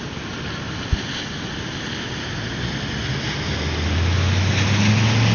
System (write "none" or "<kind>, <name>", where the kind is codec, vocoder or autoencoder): none